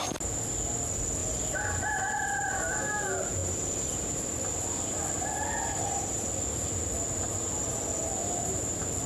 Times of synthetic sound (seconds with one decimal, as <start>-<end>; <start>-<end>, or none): 1.2-2.0; 3.4-6.7

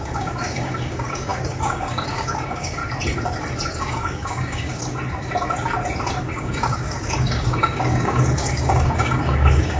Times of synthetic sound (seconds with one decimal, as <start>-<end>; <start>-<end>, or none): 0.0-2.8; 3.8-4.8; 6.2-9.8

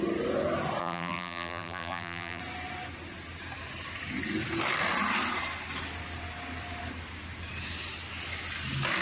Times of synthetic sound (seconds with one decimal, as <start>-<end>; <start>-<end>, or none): 0.8-2.4

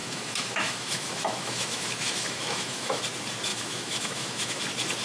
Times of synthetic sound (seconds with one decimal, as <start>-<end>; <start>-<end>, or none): 0.0-3.0; 3.5-4.6

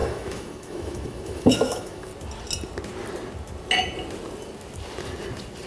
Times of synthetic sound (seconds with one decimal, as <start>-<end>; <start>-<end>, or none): 0.0-2.1

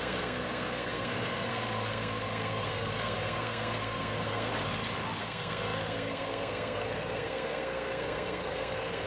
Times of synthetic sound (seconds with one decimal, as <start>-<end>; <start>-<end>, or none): 0.0-4.5; 5.2-9.1

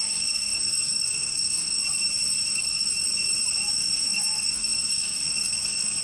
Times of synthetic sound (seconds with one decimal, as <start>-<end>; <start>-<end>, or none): 0.0-1.8; 2.5-2.9; 3.7-6.0